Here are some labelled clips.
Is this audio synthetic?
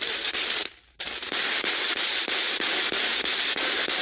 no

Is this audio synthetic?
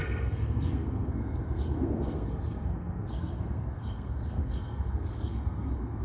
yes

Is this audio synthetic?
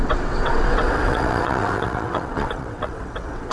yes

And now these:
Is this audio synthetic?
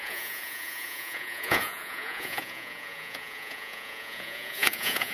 yes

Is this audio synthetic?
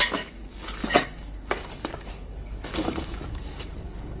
yes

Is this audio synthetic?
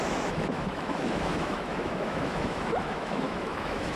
yes